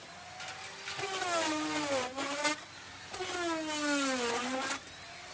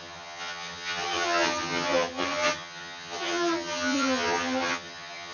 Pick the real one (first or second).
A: first